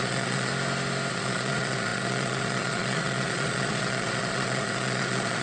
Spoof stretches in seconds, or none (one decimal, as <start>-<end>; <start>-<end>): 0.0-0.5; 1.1-5.4